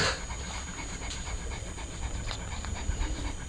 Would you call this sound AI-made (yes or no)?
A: no